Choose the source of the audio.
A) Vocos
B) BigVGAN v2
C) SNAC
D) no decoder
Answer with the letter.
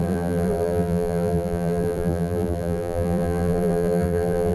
B